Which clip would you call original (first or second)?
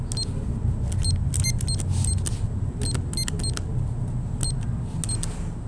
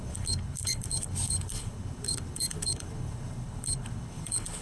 first